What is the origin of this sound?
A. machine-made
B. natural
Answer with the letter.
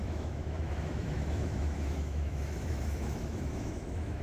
A